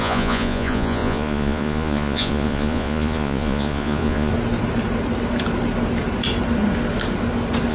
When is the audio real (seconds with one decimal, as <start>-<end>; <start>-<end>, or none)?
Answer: 4.3-7.7